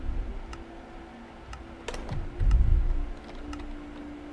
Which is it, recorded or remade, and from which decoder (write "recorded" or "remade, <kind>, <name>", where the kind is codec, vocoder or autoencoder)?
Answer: recorded